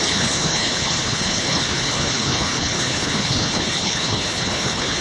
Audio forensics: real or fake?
fake